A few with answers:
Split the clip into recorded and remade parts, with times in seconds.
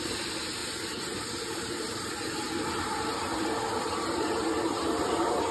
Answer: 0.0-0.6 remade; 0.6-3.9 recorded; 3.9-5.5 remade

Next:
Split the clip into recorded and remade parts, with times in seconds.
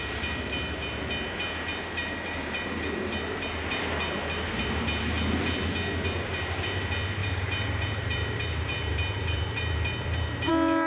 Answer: 0.0-2.0 recorded; 2.0-2.7 remade; 2.7-7.2 recorded; 7.2-10.5 remade; 10.5-10.9 recorded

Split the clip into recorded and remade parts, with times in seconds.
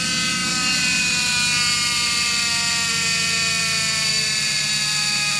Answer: 0.0-0.4 recorded; 0.4-1.0 remade; 1.0-5.4 recorded